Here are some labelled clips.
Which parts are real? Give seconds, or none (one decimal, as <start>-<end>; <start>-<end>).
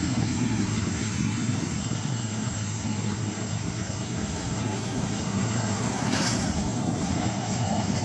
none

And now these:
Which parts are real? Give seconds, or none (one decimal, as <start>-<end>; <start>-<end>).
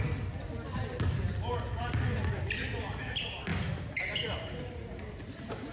0.0-5.7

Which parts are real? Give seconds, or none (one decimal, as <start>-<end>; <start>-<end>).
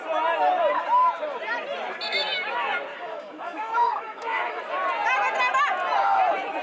0.0-2.9; 4.6-6.6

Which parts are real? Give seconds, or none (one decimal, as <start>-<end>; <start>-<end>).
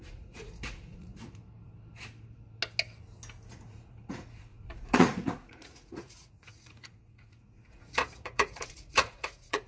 1.1-3.5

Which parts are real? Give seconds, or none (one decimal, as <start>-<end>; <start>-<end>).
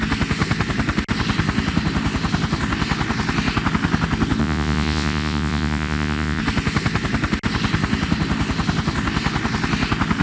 0.0-4.4; 6.4-10.2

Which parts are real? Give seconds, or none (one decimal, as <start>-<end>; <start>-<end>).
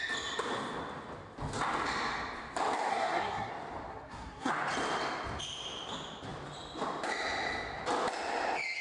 0.0-2.9; 3.5-3.9; 4.5-8.8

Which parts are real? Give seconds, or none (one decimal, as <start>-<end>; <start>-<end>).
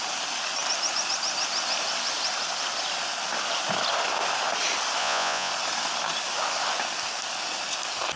0.0-5.0; 5.5-8.2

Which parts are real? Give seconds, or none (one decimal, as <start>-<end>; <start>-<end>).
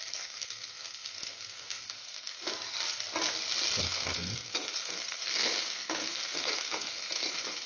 2.4-3.8